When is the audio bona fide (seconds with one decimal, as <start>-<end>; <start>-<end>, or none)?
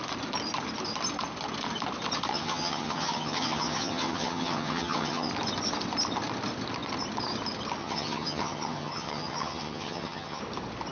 0.0-2.3; 5.3-7.8; 10.4-10.9